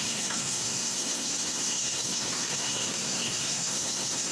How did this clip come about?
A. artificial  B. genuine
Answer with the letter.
A